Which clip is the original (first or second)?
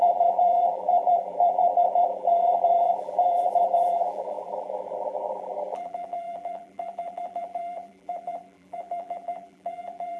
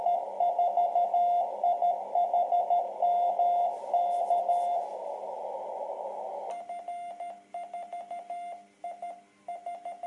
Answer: second